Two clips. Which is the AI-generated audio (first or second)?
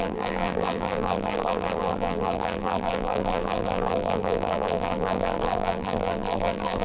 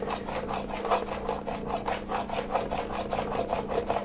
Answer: first